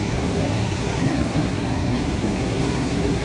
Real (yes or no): no